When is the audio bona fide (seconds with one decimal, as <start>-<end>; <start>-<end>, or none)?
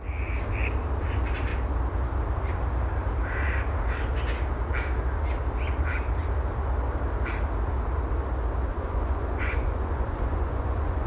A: 0.0-8.7